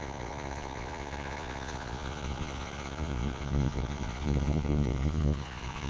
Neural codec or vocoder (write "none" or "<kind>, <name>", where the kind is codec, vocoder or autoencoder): vocoder, Vocos